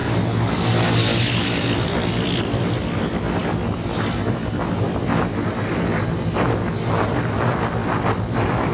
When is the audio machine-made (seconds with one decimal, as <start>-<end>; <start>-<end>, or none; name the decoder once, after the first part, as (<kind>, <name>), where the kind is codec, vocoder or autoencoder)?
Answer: 7.8-8.7 (vocoder, BigVGAN v2)